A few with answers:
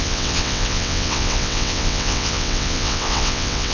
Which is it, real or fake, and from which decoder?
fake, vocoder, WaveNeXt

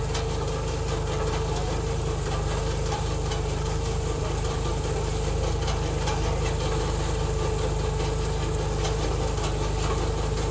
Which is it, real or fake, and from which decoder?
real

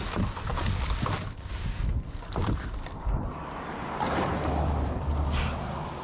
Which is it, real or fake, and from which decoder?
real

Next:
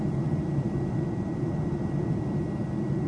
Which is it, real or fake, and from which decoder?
real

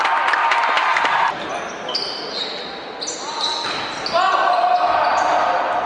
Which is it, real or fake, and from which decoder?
real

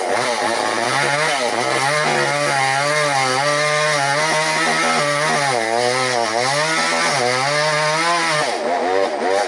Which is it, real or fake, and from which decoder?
real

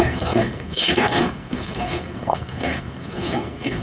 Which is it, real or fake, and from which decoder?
fake, codec, SNAC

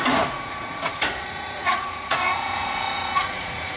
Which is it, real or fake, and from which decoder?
fake, vocoder, Vocos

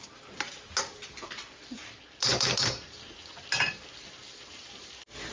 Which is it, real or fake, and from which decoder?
real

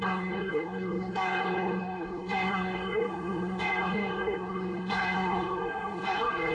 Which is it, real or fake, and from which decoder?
fake, codec, SNAC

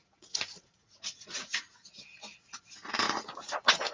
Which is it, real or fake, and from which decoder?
fake, vocoder, Vocos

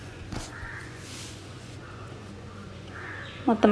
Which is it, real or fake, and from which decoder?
fake, vocoder, Vocos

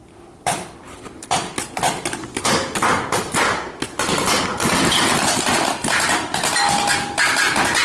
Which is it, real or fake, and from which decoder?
real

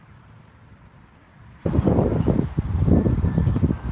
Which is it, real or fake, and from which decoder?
real